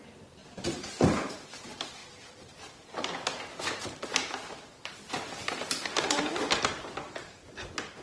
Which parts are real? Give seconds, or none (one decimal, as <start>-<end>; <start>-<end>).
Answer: 0.0-2.0; 3.8-5.4; 6.2-8.0